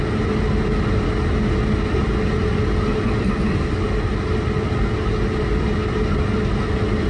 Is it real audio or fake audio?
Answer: real